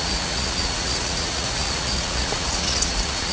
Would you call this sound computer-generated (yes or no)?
yes